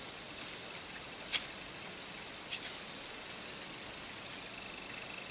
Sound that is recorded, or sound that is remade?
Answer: recorded